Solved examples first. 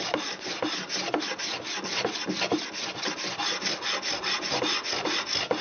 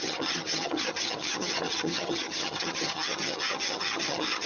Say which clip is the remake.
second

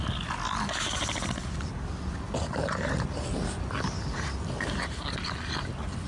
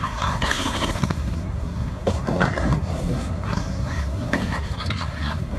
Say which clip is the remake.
second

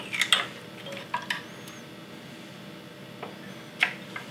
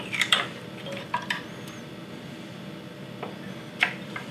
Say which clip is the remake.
second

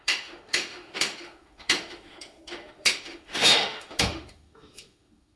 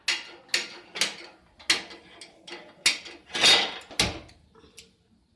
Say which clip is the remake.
first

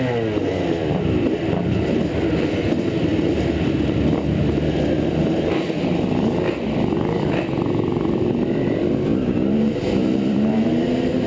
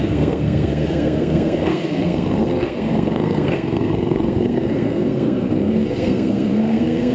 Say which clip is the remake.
second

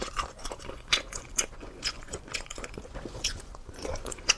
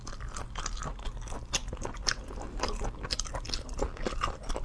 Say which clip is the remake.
first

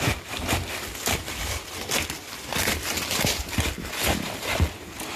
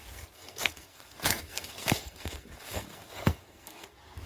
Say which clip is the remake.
second